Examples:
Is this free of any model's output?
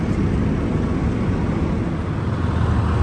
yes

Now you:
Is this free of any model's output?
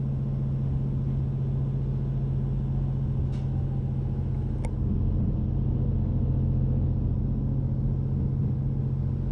yes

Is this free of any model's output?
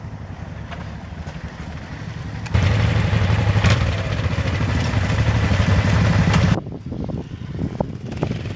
yes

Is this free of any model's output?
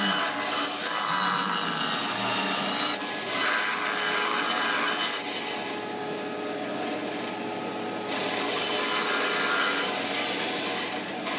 yes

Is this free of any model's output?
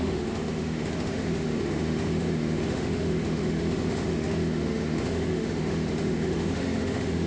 no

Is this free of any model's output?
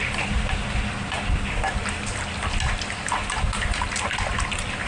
yes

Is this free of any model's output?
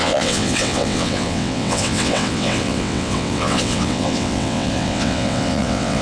no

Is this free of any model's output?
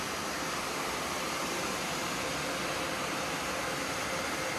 yes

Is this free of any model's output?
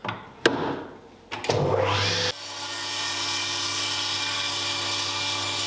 yes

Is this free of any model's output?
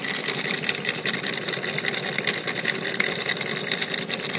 yes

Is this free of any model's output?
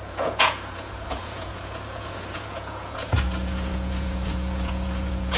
no